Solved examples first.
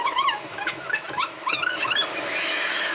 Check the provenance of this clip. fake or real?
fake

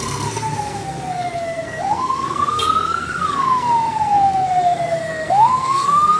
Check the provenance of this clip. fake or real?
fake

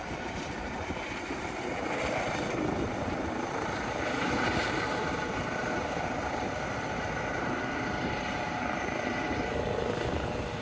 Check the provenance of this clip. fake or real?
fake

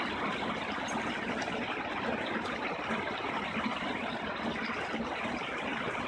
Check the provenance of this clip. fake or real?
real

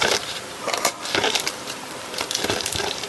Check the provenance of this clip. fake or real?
fake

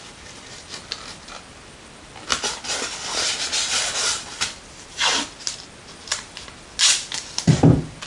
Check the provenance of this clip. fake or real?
real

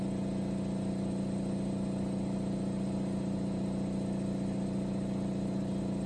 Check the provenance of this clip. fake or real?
real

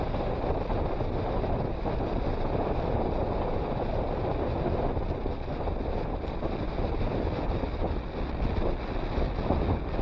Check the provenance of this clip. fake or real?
real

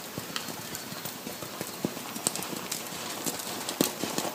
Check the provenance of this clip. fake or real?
real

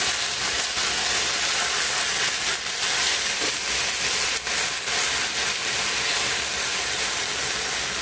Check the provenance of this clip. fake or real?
real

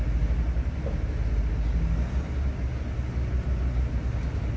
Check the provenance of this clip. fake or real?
real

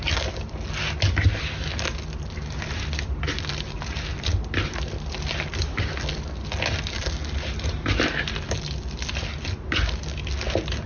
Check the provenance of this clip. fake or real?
real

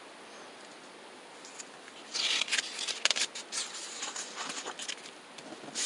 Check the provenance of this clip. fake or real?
real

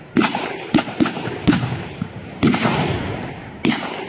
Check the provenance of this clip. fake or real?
real